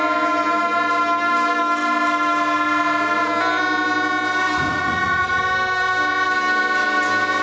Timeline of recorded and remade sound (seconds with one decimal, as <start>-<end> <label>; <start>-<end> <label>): 0.0-4.7 recorded; 4.7-5.4 remade; 5.4-7.4 recorded